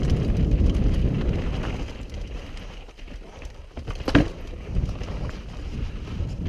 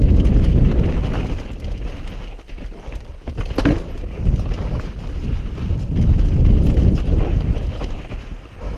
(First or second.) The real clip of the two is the second